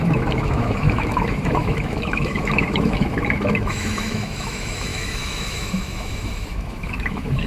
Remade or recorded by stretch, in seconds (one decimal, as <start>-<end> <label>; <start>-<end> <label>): 0.0-7.5 remade